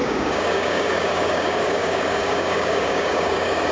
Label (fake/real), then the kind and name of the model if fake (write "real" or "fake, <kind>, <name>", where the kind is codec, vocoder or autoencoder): fake, codec, DAC